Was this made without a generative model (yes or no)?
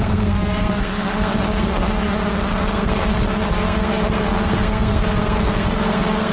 no